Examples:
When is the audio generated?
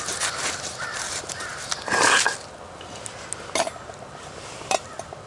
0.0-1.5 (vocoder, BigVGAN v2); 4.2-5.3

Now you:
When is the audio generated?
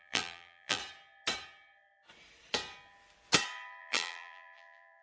0.0-0.8 (vocoder, BigVGAN v2); 3.8-5.0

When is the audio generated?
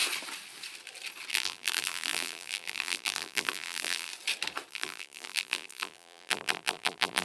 1.3-4.1 (vocoder, BigVGAN v2); 4.7-7.2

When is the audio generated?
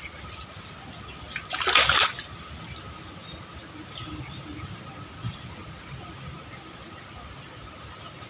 none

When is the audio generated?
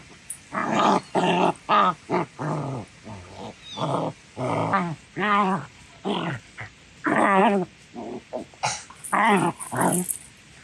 none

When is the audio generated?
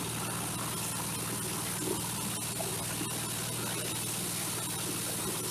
none